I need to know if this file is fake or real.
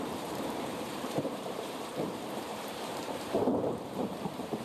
fake